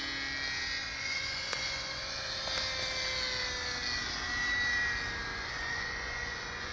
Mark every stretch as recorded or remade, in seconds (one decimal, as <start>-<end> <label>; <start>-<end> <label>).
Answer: 0.0-0.8 recorded; 0.8-2.3 remade; 2.3-5.3 recorded; 5.3-6.7 remade